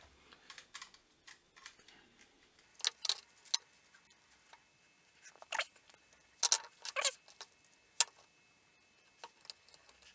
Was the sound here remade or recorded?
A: recorded